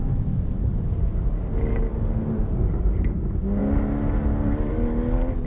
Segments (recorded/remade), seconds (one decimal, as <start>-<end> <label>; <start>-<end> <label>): 0.0-5.5 recorded